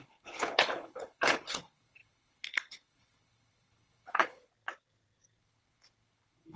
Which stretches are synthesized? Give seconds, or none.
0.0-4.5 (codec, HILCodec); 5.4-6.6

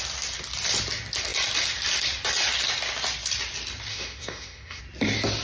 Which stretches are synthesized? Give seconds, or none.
3.9-4.8 (autoencoder, DAC-VAE)

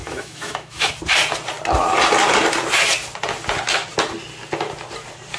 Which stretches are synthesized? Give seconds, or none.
0.0-0.9 (autoencoder, DAC-VAE)

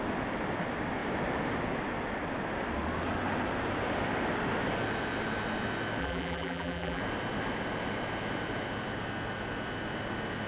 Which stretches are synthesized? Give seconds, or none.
6.0-7.0 (vocoder, BigVGAN v2)

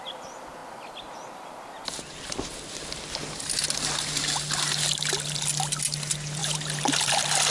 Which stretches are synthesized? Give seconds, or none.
6.4-7.1 (vocoder, BigVGAN v2)

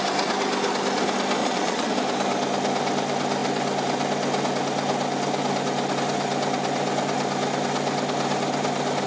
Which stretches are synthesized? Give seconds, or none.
1.4-1.9 (vocoder, Vocos)

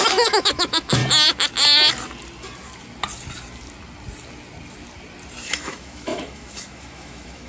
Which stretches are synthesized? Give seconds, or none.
0.0-1.0 (autoencoder, DAC-VAE); 5.5-7.5

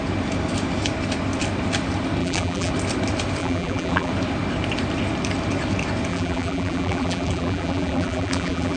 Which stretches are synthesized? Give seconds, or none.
2.2-2.7 (vocoder, BigVGAN v2); 3.4-4.1; 6.1-8.8